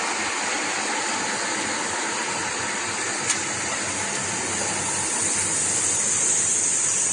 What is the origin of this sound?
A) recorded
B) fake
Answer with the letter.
A